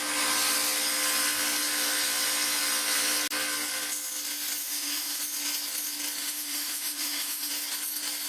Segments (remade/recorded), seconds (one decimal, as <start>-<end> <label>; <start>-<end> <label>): 0.0-4.6 recorded; 4.6-5.2 remade; 5.2-6.2 recorded; 6.2-7.5 remade; 7.5-8.3 recorded